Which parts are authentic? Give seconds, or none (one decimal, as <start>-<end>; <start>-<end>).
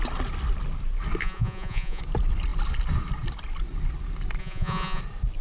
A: 0.0-1.2; 2.0-4.4; 5.0-5.4